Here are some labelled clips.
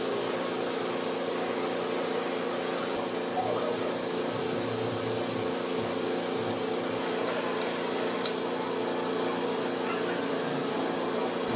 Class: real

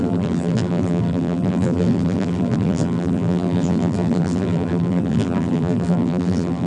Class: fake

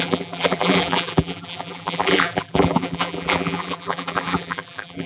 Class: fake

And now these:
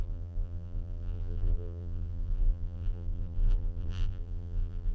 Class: fake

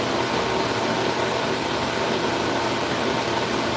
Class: real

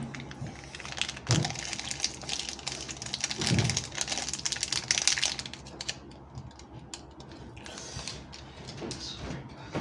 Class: real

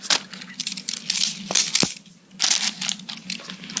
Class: real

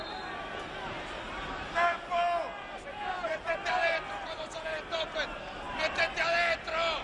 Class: real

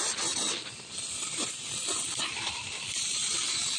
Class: real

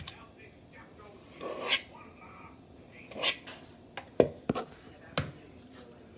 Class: real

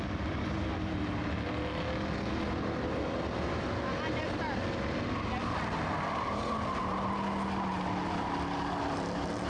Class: real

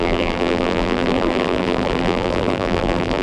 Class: fake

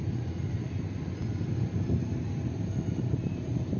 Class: fake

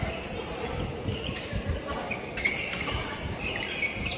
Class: fake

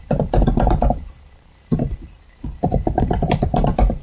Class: fake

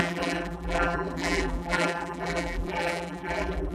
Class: fake